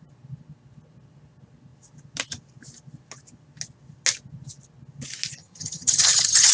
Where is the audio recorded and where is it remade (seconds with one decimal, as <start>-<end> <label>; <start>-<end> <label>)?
0.0-5.4 recorded; 5.4-6.5 remade